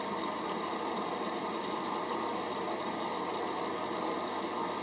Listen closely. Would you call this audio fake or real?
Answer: real